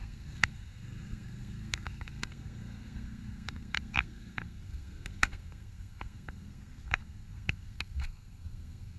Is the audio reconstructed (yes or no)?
yes